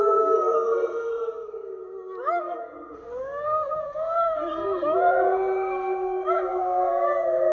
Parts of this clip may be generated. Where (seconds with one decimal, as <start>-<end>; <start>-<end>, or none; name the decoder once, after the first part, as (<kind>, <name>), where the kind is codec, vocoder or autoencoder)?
0.0-1.8 (codec, SNAC); 2.4-7.5

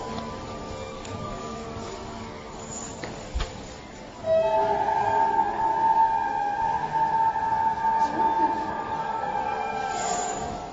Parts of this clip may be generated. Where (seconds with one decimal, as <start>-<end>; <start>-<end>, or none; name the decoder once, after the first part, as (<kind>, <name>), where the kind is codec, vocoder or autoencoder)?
0.0-4.2 (codec, DAC); 5.0-5.7; 8.7-10.7

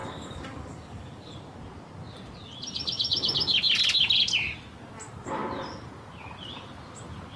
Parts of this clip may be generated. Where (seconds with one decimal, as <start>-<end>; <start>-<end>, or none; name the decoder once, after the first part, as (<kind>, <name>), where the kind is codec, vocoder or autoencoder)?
0.0-1.3 (codec, DAC)

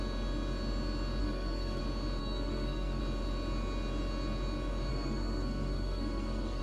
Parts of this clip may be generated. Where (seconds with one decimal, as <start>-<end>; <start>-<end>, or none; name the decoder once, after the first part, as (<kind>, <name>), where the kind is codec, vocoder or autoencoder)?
1.2-1.8 (codec, SNAC); 2.2-3.0; 4.9-6.6

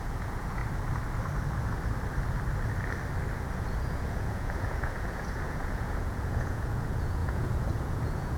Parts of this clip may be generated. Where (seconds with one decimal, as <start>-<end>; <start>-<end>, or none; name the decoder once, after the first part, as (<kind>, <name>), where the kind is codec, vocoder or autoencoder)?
0.0-0.6 (vocoder, Vocos); 3.6-8.4

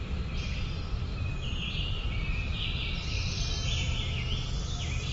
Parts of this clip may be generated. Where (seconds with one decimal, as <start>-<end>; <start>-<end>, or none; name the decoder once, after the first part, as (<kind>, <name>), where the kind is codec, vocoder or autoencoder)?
1.1-4.2 (vocoder, BigVGAN v2)

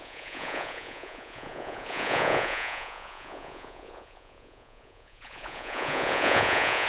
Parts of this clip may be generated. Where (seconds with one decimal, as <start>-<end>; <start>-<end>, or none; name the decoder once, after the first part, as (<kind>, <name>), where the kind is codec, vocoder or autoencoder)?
0.0-6.9 (vocoder, Vocos)